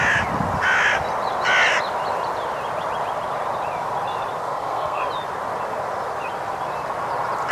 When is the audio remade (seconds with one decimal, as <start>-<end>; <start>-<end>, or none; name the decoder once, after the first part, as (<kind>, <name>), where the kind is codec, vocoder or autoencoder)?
4.4-5.0 (codec, SNAC)